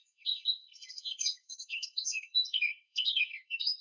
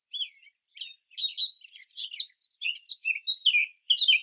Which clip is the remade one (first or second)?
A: first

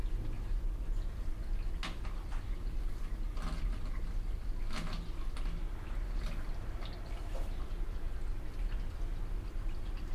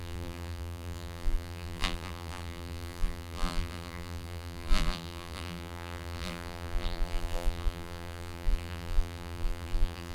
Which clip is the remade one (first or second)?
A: second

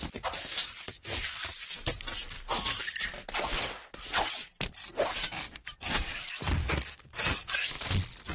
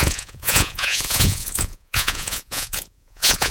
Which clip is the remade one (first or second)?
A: second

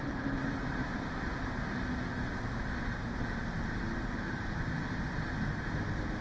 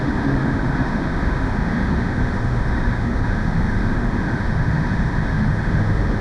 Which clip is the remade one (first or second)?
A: second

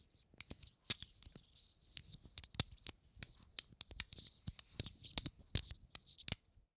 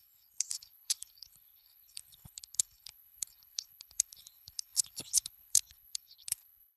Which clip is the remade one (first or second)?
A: second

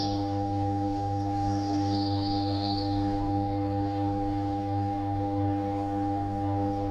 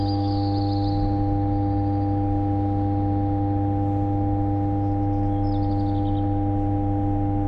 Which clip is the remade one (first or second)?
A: first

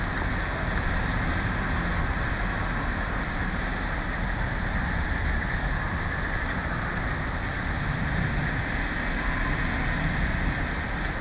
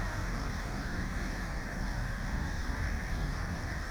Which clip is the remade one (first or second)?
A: second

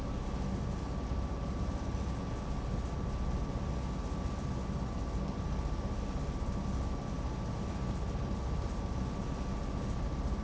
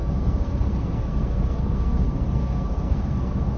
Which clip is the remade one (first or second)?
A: second